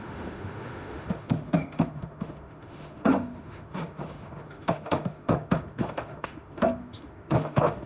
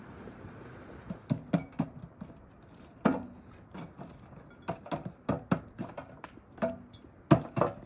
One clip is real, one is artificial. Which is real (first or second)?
second